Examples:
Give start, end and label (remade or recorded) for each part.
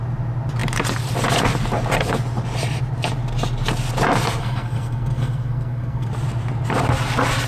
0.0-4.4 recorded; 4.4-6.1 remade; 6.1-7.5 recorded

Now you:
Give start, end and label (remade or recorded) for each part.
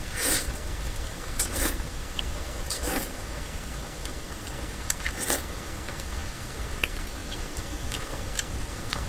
0.0-9.1 remade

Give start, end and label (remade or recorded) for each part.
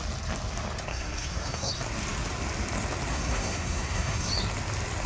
0.0-0.9 recorded; 0.9-1.7 remade; 1.7-3.1 recorded; 3.1-4.3 remade; 4.3-5.1 recorded